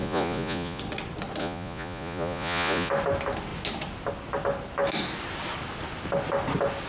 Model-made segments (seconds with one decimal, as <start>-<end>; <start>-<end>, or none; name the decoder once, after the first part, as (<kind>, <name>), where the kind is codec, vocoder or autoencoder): 0.0-0.8 (vocoder, Vocos); 1.4-2.9